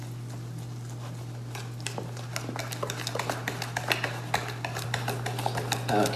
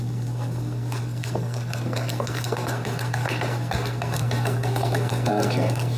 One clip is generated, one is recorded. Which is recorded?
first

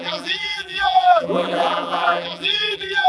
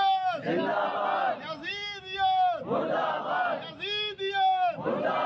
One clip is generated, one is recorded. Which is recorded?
second